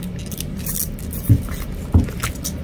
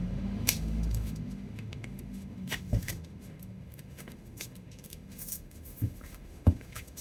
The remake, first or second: second